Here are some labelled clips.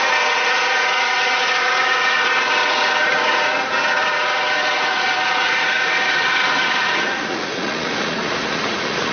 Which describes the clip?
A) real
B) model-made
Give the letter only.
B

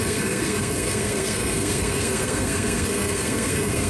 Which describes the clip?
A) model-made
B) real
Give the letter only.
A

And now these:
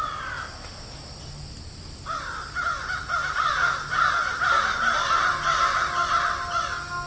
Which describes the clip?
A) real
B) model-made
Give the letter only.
A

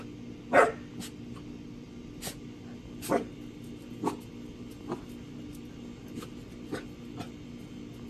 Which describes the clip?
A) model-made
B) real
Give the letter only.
B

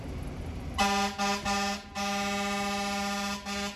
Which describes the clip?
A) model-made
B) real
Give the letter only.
B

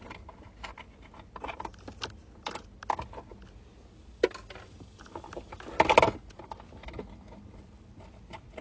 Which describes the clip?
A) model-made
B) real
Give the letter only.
B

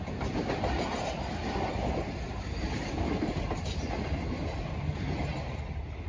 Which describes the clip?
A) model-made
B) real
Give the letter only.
B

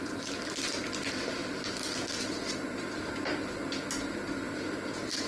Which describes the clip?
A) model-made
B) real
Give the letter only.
B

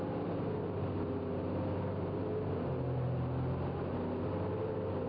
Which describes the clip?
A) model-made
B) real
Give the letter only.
B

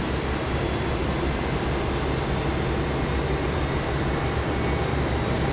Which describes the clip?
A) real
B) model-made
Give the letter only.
A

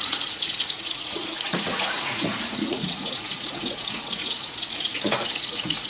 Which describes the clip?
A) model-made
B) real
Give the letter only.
A